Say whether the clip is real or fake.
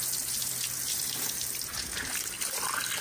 real